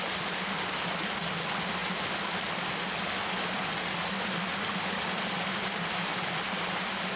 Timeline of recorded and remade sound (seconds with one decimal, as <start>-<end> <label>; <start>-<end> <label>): 0.0-5.5 recorded; 5.5-6.4 remade; 6.4-7.2 recorded